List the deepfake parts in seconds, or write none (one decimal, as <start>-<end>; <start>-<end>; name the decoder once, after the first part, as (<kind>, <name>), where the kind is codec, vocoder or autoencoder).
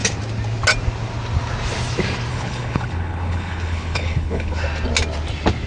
2.3-4.6 (codec, HILCodec)